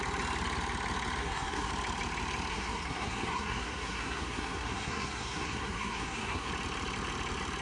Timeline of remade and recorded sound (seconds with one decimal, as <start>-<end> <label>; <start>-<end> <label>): 0.0-1.2 recorded; 1.2-1.7 remade; 1.7-2.5 recorded; 2.5-6.5 remade; 6.5-7.6 recorded